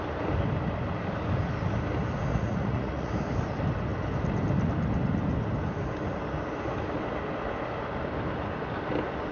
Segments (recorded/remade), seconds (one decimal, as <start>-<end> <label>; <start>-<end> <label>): 0.0-2.3 recorded; 2.3-3.1 remade; 3.1-9.3 recorded